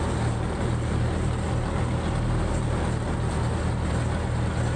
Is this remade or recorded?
recorded